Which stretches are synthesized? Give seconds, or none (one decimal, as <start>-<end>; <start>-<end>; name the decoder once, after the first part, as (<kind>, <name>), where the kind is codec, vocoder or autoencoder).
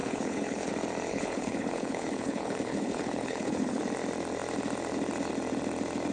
0.0-0.7 (codec, HILCodec); 1.1-3.8